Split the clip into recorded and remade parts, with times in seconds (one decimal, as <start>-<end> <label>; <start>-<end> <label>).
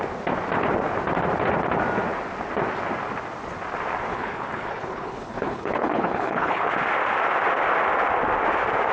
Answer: 0.0-4.1 recorded; 4.1-6.7 remade; 6.7-8.9 recorded